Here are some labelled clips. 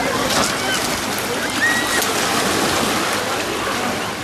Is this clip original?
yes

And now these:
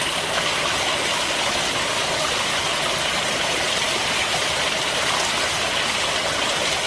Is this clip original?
yes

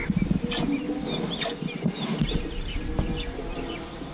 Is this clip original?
yes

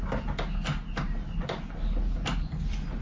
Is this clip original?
yes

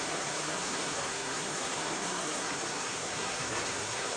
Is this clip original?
no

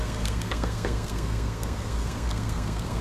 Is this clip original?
no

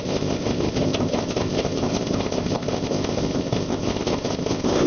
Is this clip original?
no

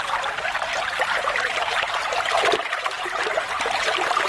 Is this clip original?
no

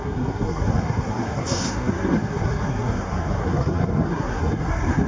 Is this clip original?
no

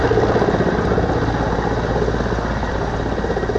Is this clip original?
yes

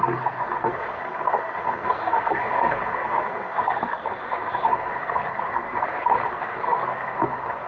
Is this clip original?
no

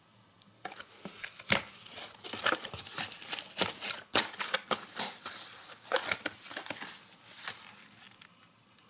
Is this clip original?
yes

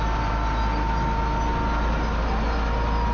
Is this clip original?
yes